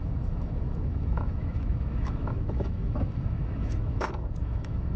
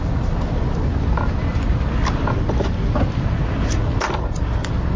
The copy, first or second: first